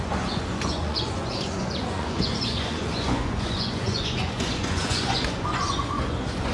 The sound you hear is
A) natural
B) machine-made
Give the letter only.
B